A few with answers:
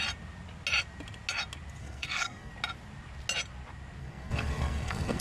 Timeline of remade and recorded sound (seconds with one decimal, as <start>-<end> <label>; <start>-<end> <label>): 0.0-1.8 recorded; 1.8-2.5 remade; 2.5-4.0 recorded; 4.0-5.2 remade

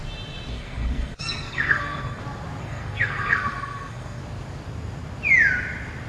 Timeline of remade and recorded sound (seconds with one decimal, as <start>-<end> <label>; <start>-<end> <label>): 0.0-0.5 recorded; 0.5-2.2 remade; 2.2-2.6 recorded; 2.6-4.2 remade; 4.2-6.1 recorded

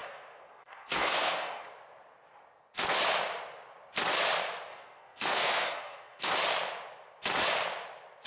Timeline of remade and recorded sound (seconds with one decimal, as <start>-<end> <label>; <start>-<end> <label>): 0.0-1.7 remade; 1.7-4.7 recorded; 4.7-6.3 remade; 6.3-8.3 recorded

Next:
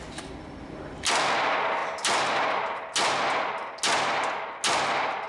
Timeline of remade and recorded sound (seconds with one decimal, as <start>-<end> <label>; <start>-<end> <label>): 0.0-5.3 recorded

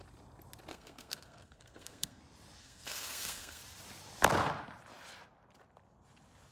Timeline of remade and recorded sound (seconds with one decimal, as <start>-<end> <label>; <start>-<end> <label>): 0.0-0.7 recorded; 0.7-2.2 remade; 2.2-2.6 recorded; 2.6-3.6 remade; 3.6-6.5 recorded